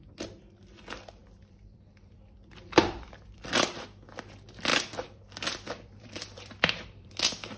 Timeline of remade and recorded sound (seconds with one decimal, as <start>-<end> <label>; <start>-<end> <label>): 0.0-1.2 recorded; 1.2-3.5 remade; 3.5-4.7 recorded; 4.7-7.1 remade; 7.1-7.6 recorded